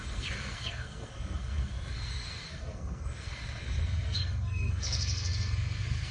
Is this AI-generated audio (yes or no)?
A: yes